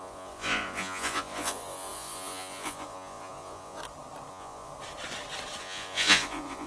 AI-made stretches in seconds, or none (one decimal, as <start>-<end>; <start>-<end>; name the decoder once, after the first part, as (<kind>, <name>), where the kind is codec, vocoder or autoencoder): 0.0-3.8 (vocoder, Vocos); 4.3-4.7; 5.6-6.7